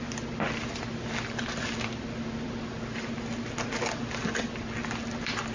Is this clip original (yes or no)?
yes